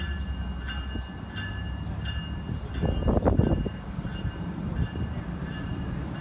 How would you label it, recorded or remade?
recorded